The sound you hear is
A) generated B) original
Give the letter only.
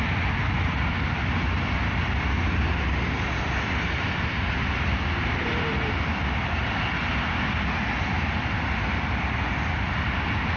B